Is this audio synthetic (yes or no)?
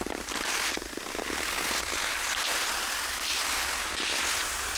no